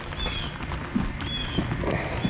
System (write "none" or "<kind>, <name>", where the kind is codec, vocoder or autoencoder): none